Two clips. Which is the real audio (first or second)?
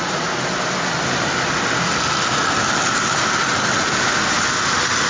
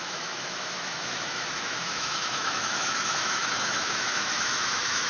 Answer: first